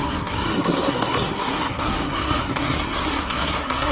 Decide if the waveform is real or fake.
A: fake